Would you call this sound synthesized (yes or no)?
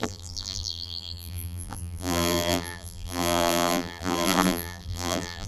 yes